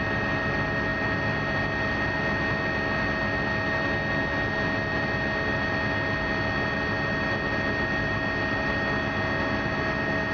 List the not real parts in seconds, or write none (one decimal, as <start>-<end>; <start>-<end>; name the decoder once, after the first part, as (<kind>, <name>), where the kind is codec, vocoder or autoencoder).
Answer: none